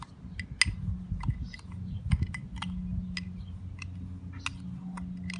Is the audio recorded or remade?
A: recorded